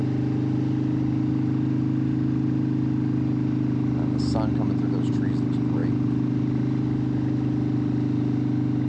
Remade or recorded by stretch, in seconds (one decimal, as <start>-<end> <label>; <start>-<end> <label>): 0.0-8.9 recorded